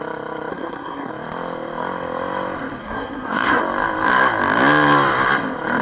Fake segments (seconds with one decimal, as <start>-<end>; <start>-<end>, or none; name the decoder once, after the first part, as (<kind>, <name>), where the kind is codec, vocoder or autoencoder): 0.5-1.1 (codec, SNAC); 2.8-3.6